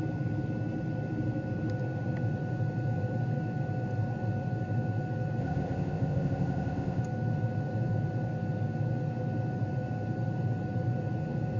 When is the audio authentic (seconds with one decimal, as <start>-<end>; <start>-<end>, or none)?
0.0-5.4; 7.0-11.6